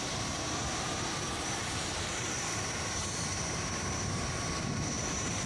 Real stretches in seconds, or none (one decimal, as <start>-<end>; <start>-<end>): none